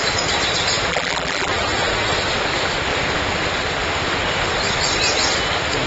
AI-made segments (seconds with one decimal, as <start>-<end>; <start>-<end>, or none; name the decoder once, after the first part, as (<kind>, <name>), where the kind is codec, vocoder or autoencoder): 0.9-1.5 (vocoder, BigVGAN v2)